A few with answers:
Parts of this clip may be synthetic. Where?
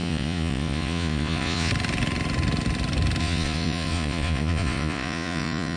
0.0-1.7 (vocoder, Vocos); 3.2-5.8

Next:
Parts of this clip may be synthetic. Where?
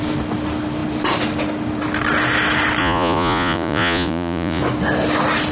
2.8-4.6 (vocoder, Vocos)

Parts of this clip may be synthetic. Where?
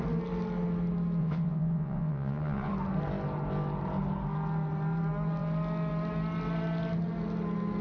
1.2-2.7 (vocoder, Vocos)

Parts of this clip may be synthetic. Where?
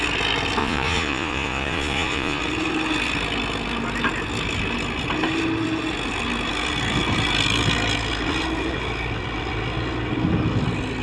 0.6-2.4 (vocoder, Vocos)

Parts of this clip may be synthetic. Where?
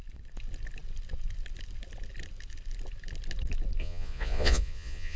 3.8-5.2 (vocoder, Vocos)